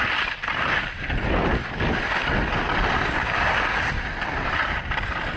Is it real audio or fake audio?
real